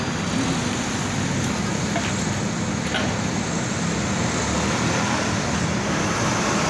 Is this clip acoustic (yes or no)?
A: yes